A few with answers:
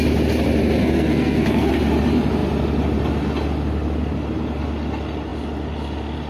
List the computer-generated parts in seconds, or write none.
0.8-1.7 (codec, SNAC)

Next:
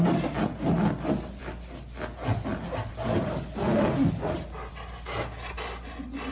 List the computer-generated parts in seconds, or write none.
none